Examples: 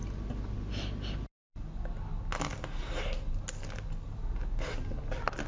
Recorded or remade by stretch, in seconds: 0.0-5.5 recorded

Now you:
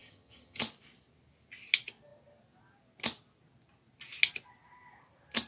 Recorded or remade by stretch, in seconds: 0.0-0.6 remade; 0.6-5.5 recorded

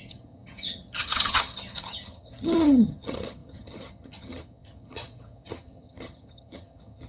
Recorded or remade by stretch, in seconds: 0.0-7.1 remade

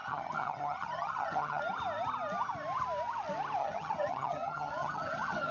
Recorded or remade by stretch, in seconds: 0.0-1.6 remade; 1.6-3.6 recorded; 3.6-5.5 remade

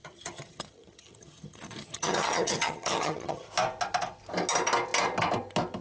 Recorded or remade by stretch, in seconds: 0.0-3.5 remade; 3.5-5.8 recorded

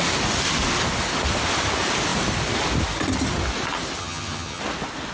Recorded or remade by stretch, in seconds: 0.0-4.0 recorded; 4.0-4.6 remade; 4.6-5.1 recorded

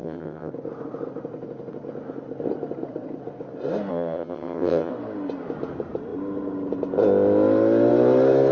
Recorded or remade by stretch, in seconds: 0.0-0.5 remade; 0.5-3.9 recorded; 3.9-4.9 remade; 4.9-8.5 recorded